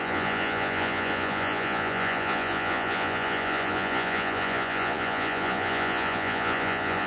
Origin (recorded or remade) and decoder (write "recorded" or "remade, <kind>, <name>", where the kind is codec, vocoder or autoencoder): remade, vocoder, Vocos